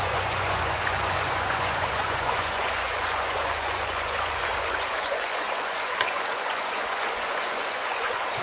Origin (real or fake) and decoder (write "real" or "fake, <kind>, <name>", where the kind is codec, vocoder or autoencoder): fake, vocoder, Vocos